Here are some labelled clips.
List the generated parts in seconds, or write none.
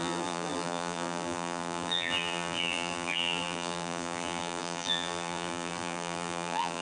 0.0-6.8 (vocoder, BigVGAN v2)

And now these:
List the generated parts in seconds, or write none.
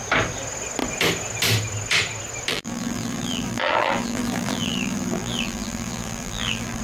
2.5-6.8 (vocoder, BigVGAN v2)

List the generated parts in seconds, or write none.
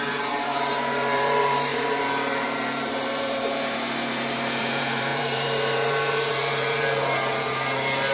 0.0-8.1 (vocoder, BigVGAN v2)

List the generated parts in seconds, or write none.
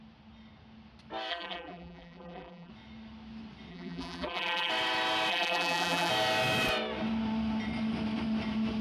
1.3-2.7 (vocoder, BigVGAN v2); 3.7-4.7; 5.3-6.1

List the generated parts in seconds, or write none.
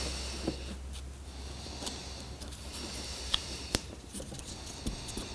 2.0-3.9 (vocoder, BigVGAN v2)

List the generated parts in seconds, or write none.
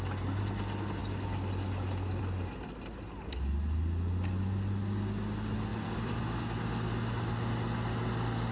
5.7-6.2 (vocoder, BigVGAN v2)